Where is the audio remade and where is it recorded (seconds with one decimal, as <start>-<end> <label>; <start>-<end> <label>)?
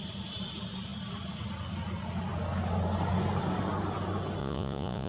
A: 0.0-4.4 recorded; 4.4-5.1 remade